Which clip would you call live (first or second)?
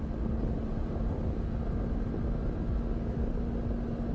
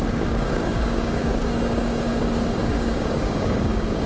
first